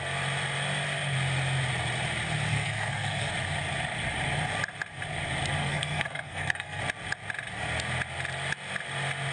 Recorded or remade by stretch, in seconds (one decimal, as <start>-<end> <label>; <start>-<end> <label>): 0.0-2.5 recorded; 2.5-3.3 remade; 3.3-5.6 recorded; 5.6-6.8 remade; 6.8-9.3 recorded